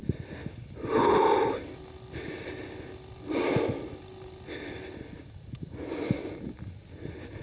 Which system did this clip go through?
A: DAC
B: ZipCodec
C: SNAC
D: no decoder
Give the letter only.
D